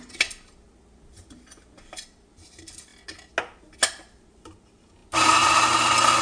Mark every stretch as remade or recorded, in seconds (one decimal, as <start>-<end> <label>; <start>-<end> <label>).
0.0-6.2 recorded